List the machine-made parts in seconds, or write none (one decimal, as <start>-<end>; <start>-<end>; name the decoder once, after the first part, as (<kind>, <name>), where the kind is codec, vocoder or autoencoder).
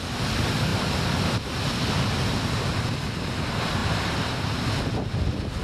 none